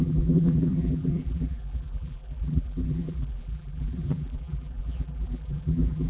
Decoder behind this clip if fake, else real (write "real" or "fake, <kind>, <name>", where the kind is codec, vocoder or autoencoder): fake, vocoder, BigVGAN v2